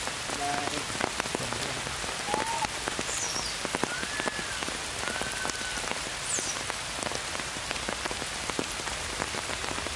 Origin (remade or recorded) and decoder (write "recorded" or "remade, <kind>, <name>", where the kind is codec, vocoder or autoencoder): recorded